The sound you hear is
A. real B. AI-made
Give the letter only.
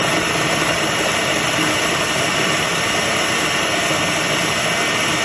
A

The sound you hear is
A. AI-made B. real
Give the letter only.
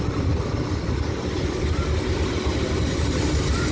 B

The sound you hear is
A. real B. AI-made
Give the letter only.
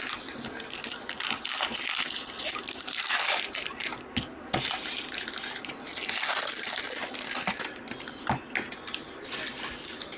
A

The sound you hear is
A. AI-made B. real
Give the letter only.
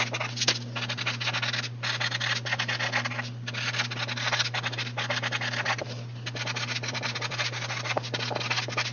B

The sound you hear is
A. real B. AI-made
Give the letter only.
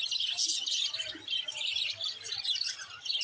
A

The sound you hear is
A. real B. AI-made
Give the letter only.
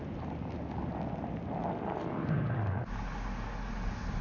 A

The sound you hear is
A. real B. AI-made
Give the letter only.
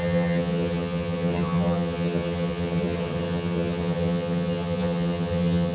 B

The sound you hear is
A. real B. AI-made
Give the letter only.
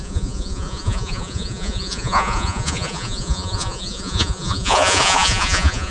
B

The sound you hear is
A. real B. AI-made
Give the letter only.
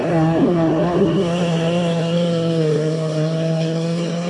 B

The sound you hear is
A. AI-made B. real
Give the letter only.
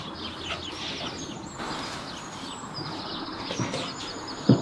B